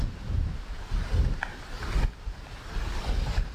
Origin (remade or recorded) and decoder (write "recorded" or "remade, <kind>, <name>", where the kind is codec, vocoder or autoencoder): recorded